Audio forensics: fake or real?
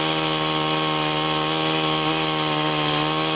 real